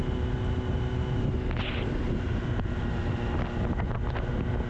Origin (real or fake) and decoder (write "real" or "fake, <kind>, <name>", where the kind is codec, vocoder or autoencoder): real